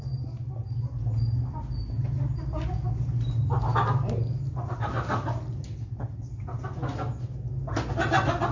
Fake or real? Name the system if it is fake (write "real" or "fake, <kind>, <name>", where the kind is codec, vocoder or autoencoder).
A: real